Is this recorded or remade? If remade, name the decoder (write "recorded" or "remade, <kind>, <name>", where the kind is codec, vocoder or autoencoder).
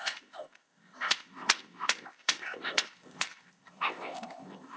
remade, codec, ZipCodec